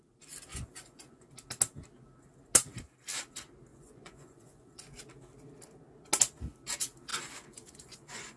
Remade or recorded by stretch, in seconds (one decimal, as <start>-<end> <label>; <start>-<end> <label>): 0.0-0.5 recorded; 0.5-1.3 remade; 1.3-3.7 recorded; 3.7-5.0 remade; 5.0-7.1 recorded; 7.1-8.4 remade